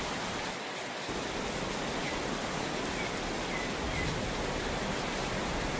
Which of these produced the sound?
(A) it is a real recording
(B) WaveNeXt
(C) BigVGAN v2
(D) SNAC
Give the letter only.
A